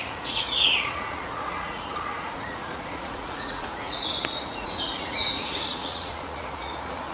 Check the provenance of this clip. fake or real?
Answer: fake